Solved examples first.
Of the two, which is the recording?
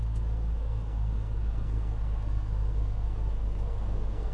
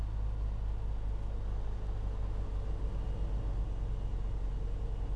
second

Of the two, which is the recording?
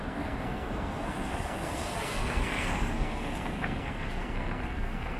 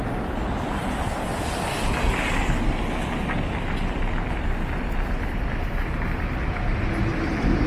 second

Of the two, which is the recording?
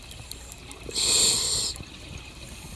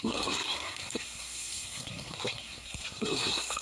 first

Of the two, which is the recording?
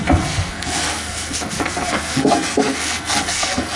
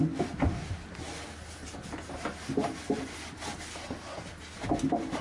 second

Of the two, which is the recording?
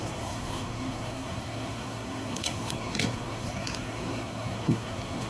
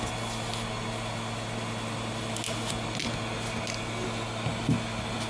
second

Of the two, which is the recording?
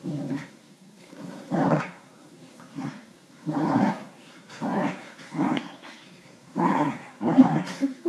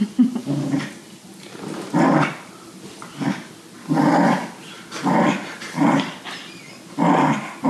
second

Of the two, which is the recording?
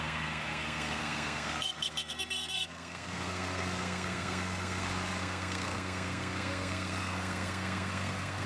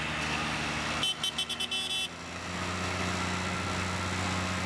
second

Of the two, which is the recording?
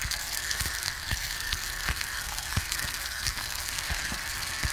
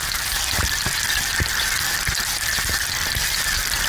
second